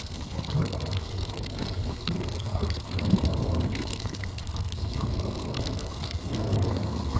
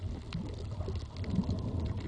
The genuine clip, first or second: second